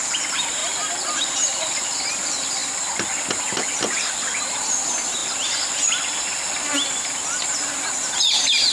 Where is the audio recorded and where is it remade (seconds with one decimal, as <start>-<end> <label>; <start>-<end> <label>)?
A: 0.0-8.7 recorded